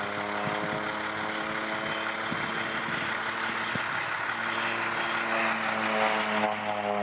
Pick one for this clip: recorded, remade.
recorded